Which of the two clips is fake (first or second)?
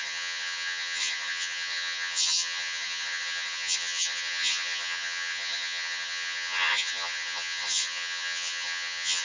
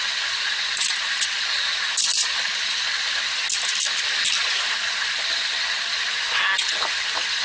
first